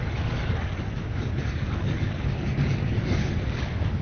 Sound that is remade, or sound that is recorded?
remade